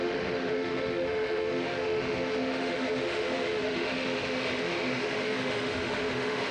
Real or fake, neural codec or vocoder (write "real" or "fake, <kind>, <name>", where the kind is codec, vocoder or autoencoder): fake, autoencoder, DAC-VAE